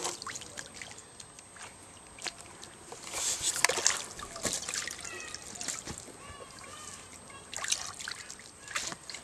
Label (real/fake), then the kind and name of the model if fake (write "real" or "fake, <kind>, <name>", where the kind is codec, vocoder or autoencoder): real